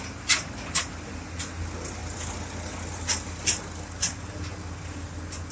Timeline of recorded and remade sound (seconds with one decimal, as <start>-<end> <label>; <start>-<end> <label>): 0.0-5.5 recorded